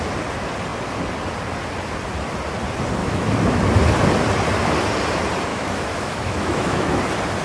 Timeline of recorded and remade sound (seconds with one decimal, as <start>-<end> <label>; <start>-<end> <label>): 0.0-3.0 recorded; 3.0-3.6 remade; 3.6-5.5 recorded; 5.5-7.0 remade; 7.0-7.4 recorded